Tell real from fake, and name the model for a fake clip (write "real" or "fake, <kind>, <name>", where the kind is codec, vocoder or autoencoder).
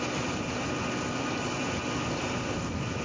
real